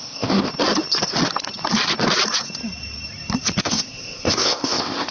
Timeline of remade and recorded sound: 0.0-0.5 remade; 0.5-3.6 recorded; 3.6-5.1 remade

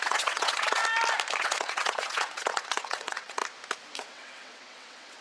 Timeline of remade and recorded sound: 0.0-0.8 remade; 0.8-1.4 recorded; 1.4-3.4 remade; 3.4-4.0 recorded; 4.0-5.2 remade

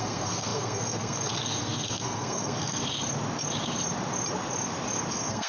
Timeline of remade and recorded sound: 0.0-2.8 remade; 2.8-5.1 recorded; 5.1-5.5 remade

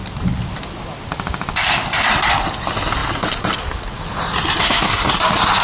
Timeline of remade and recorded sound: 0.0-4.6 recorded; 4.6-5.1 remade; 5.1-5.6 recorded

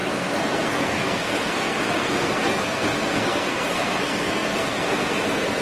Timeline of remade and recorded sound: 0.0-5.6 remade